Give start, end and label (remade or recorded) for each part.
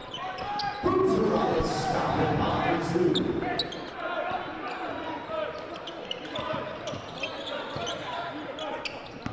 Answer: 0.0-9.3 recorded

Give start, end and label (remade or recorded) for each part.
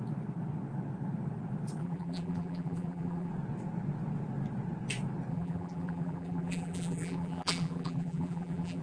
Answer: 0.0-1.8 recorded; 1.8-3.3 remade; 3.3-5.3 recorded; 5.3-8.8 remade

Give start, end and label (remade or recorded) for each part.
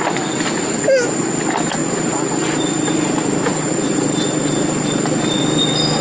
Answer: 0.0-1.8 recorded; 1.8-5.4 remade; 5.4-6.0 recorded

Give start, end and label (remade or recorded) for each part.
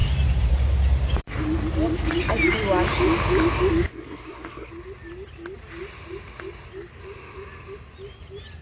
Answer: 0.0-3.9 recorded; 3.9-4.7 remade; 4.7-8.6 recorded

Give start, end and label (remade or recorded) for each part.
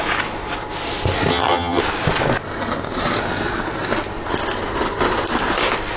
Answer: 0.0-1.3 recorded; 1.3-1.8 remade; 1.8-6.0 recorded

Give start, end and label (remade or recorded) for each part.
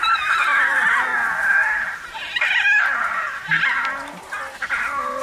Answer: 0.0-0.5 remade; 0.5-3.6 recorded; 3.6-5.2 remade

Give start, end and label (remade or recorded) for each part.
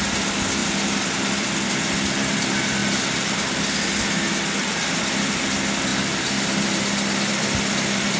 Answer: 0.0-0.6 recorded; 0.6-1.4 remade; 1.4-2.8 recorded; 2.8-5.3 remade; 5.3-5.9 recorded; 5.9-7.3 remade; 7.3-8.2 recorded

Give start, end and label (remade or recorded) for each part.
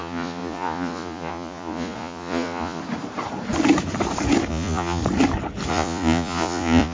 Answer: 0.0-2.8 remade; 2.8-4.5 recorded; 4.5-5.0 remade; 5.0-5.7 recorded; 5.7-6.9 remade